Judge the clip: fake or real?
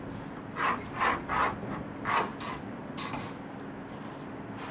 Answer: real